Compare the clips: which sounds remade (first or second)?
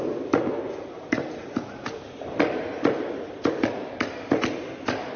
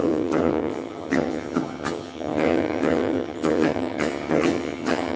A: second